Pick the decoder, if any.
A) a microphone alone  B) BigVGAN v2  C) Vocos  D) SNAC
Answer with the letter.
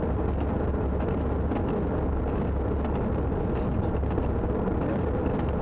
A